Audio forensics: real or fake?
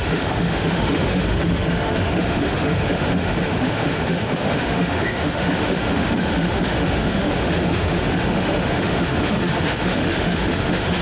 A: fake